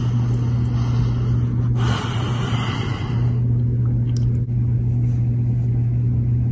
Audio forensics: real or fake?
real